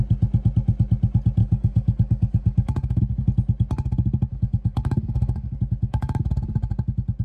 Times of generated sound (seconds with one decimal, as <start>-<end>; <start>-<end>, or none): 1.4-3.0; 4.3-6.2